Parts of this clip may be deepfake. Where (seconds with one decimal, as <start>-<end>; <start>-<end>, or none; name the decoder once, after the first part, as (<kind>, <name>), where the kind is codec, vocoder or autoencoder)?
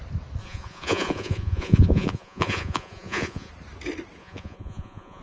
0.4-3.5 (vocoder, Vocos); 4.2-5.2